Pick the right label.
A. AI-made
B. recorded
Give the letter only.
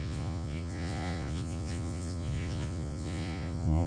A